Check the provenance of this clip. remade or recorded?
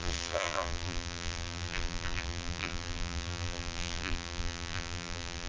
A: remade